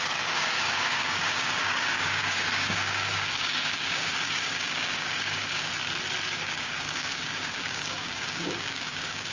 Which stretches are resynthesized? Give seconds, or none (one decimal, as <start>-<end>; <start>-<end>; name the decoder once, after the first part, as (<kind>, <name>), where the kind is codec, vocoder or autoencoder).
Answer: 0.0-5.7 (codec, DAC); 6.3-9.3